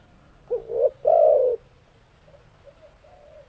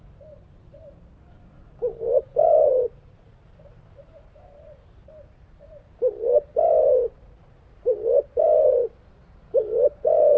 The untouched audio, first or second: first